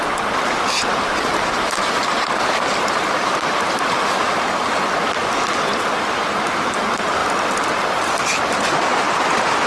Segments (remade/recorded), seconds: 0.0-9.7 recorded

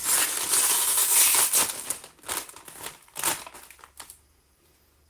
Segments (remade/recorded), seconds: 0.0-0.6 recorded; 0.6-1.0 remade; 1.0-4.1 recorded; 4.1-5.1 remade

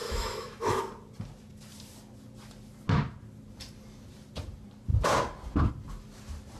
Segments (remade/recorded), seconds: 0.0-0.8 remade; 0.8-6.6 recorded

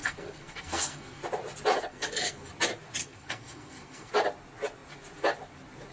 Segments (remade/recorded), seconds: 0.0-1.2 remade; 1.2-1.9 recorded; 1.9-2.5 remade; 2.5-3.0 recorded; 3.0-4.1 remade; 4.1-5.9 recorded

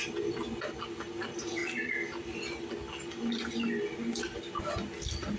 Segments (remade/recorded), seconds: 0.0-5.4 recorded

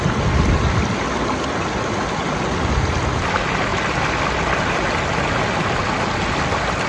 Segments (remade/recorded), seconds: 0.0-6.9 recorded